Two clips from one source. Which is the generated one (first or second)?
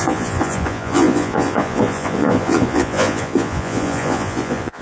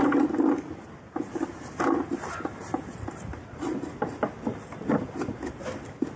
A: first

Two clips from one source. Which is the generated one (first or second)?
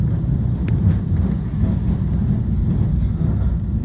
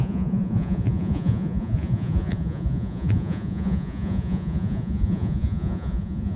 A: second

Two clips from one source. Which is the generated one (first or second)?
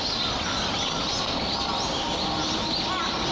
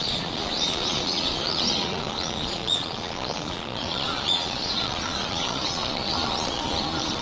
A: second